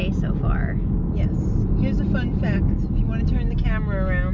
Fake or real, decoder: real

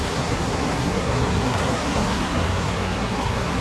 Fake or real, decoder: fake, codec, SNAC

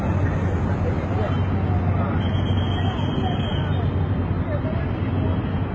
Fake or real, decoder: real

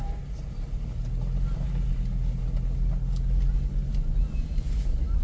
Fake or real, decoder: real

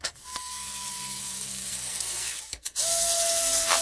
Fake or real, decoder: fake, codec, SNAC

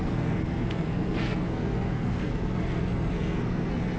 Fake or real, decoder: fake, codec, SNAC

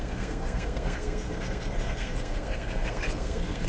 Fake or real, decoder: fake, codec, SNAC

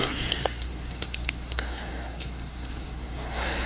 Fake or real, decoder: fake, codec, SNAC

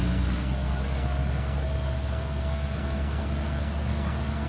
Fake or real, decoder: fake, codec, SNAC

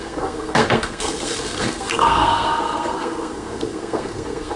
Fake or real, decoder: fake, codec, SNAC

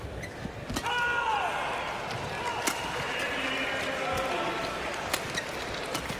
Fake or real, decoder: real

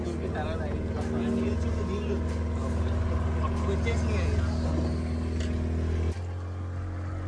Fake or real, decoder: real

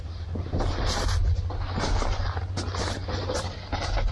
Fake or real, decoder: real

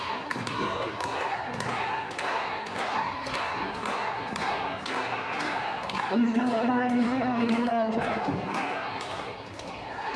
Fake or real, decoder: fake, codec, SNAC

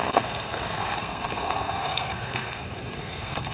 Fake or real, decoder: fake, codec, SNAC